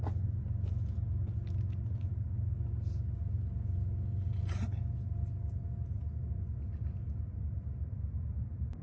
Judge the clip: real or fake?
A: real